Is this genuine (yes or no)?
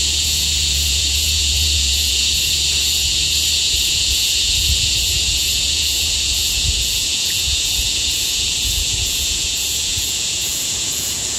no